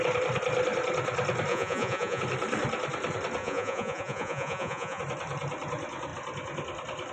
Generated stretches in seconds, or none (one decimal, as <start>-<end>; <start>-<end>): 1.5-2.2; 3.4-5.0